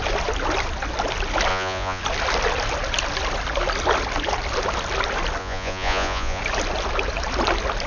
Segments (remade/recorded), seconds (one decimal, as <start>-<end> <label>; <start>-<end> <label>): 0.0-1.5 recorded; 1.5-2.0 remade; 2.0-5.4 recorded; 5.4-6.4 remade; 6.4-7.9 recorded